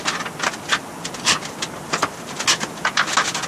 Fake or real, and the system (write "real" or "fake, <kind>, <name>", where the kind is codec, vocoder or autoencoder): real